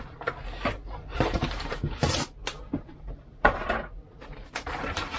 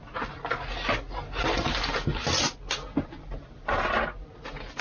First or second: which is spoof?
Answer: first